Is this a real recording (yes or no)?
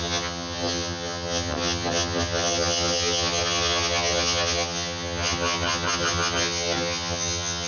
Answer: no